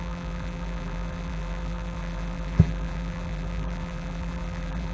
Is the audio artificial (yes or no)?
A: yes